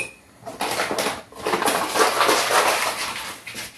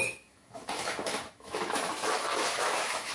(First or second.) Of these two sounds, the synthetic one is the second